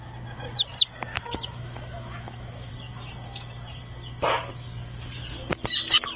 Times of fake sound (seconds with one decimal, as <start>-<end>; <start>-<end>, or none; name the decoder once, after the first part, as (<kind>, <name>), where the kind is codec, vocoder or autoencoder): 1.1-2.7 (autoencoder, DAC-VAE)